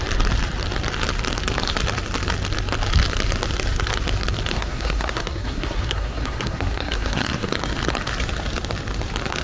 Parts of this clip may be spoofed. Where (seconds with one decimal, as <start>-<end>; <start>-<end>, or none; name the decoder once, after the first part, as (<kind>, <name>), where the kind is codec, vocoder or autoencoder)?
4.5-7.5 (codec, SNAC)